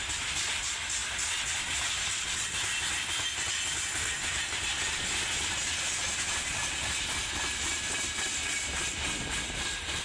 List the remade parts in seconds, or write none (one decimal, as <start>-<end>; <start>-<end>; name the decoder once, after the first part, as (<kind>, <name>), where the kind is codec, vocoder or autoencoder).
none